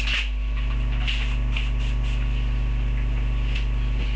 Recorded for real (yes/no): yes